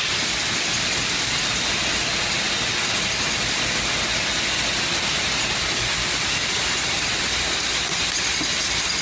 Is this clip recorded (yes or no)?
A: yes